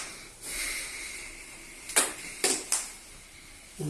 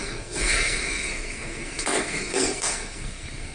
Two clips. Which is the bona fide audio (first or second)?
first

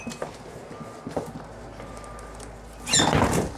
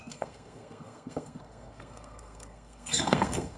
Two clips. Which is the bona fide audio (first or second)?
first